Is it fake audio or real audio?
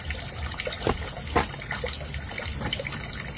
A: real